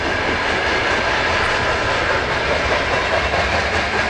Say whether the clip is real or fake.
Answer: real